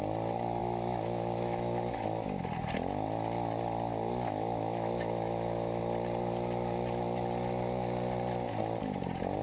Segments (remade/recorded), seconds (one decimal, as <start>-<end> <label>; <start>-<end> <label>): 0.0-0.6 recorded; 0.6-2.4 remade; 2.4-3.9 recorded; 3.9-5.8 remade; 5.8-9.4 recorded